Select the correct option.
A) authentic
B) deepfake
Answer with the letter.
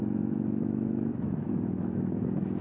B